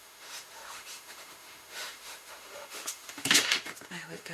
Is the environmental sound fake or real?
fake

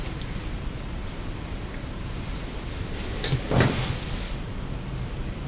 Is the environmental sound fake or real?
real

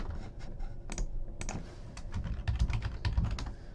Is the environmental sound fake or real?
real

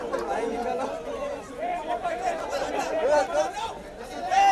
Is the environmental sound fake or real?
fake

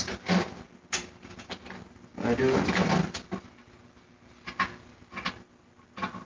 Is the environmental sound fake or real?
real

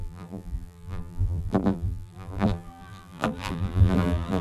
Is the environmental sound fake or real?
fake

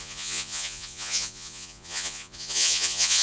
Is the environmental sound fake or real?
fake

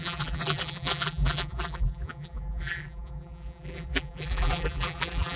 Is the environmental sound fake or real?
fake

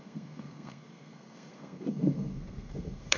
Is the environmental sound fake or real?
fake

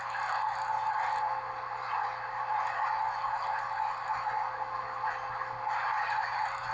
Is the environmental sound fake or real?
real